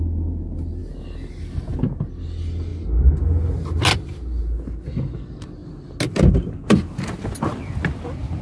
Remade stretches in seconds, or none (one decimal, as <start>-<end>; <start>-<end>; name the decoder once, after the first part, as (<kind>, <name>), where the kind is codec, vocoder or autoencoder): none